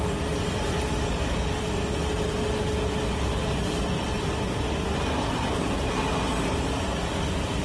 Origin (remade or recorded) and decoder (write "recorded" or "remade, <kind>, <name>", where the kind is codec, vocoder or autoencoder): recorded